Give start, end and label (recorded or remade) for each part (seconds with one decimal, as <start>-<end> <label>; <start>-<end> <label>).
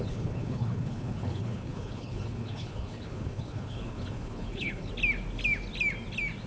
0.0-4.9 remade; 4.9-6.5 recorded